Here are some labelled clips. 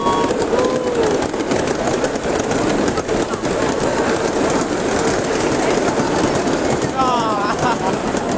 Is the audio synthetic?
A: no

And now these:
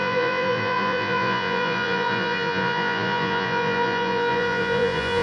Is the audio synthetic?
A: yes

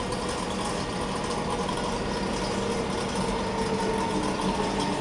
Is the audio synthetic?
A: no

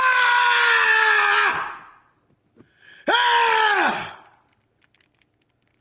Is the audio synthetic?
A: no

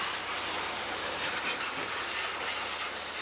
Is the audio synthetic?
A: no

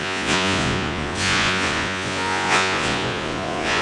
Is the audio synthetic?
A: yes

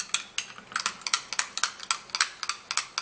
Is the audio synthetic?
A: no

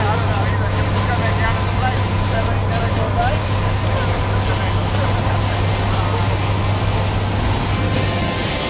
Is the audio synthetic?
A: no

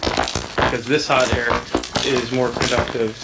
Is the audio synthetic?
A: no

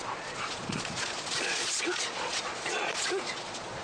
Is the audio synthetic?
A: yes